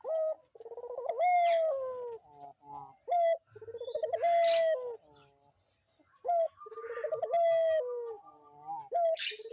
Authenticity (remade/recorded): recorded